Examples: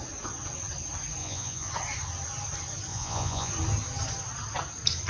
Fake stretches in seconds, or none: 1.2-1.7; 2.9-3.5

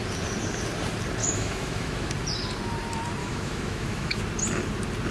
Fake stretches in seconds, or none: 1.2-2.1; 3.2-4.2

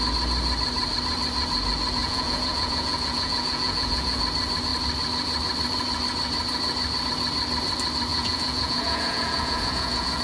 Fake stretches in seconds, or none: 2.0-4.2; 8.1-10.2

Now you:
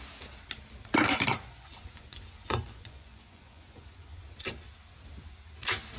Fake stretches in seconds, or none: 1.3-4.2

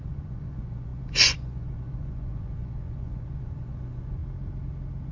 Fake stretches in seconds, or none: 0.0-4.2

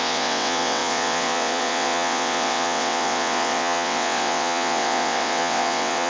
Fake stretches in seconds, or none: 0.0-6.1